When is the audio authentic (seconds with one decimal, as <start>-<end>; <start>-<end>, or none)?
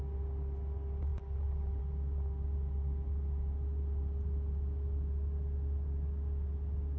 0.0-7.0